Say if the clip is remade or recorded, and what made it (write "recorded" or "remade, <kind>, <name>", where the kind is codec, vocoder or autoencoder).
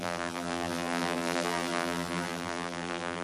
remade, vocoder, BigVGAN v2